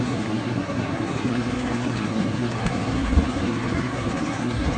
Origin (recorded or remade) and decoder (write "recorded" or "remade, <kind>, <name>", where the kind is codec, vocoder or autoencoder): remade, codec, SNAC